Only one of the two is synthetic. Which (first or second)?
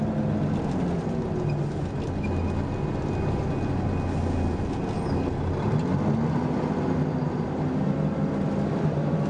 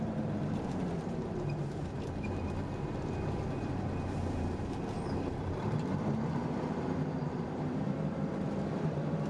second